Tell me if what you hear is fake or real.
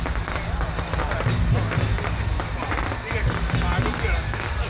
real